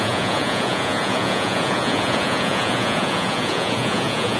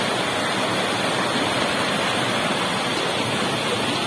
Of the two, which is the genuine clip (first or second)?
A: second